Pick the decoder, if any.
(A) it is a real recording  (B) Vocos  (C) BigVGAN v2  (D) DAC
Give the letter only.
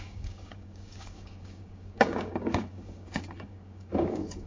D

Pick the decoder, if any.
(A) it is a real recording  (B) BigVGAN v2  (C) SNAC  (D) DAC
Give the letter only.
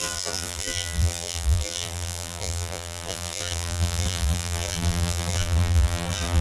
B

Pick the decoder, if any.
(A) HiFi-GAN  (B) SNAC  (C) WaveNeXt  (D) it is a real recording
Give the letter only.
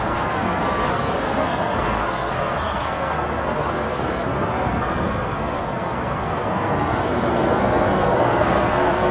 B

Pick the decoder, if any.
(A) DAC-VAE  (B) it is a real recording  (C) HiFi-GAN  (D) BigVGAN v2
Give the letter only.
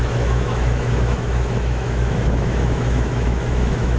A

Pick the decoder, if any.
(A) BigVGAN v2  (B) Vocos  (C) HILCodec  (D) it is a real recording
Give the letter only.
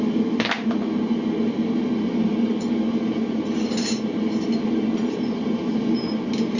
D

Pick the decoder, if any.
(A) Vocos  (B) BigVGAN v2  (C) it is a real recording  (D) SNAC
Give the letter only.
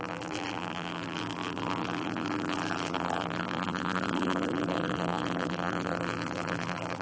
B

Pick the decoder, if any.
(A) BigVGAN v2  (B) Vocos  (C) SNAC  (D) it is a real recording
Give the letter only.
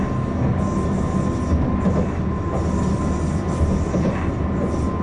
D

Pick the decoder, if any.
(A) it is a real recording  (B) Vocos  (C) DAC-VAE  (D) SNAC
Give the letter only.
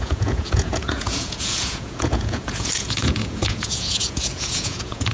B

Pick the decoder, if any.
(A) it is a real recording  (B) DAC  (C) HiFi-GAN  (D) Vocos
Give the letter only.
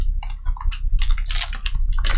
A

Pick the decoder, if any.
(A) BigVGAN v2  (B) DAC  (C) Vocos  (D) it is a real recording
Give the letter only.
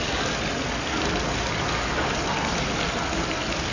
D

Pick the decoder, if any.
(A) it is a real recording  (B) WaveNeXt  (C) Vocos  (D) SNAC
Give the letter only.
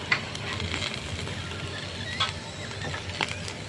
A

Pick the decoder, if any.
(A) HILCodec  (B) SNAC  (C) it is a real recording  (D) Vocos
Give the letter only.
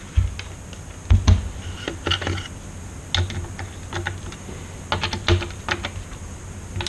C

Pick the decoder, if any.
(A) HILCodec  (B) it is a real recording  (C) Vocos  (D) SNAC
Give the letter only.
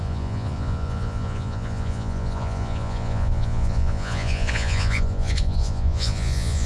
C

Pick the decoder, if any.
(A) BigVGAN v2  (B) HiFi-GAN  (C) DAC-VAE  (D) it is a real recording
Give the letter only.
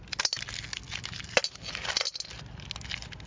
D